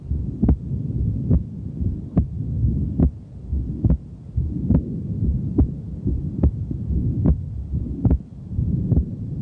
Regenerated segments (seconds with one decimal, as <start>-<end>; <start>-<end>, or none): 8.3-9.4